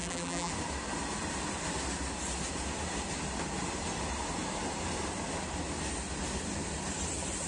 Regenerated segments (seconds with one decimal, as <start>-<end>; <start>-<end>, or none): 0.0-0.5